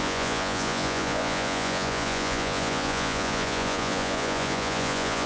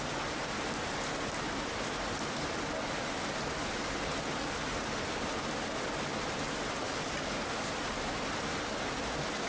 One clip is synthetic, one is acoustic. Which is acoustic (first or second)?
second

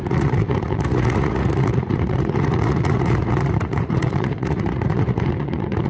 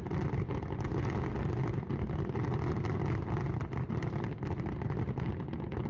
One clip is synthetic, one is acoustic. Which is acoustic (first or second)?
second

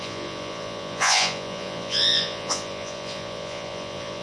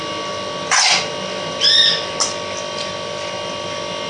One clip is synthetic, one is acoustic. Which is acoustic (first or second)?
second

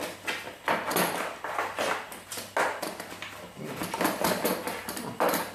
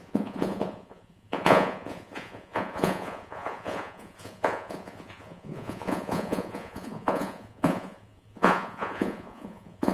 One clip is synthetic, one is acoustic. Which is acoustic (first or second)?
first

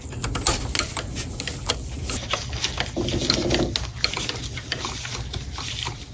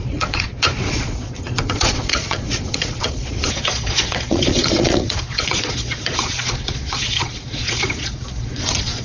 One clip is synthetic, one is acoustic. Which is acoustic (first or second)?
first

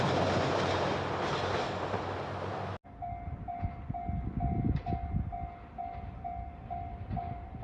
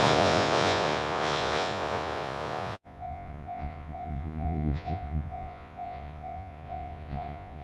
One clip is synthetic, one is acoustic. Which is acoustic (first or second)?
first